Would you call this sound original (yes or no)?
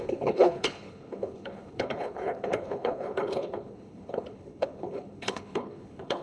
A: no